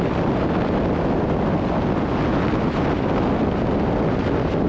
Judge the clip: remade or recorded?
recorded